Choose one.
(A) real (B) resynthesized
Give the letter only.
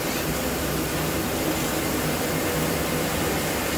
A